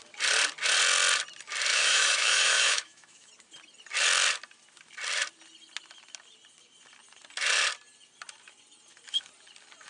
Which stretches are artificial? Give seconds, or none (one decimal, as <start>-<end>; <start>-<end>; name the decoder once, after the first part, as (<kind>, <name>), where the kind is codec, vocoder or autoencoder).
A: 1.7-3.3 (autoencoder, DAC-VAE)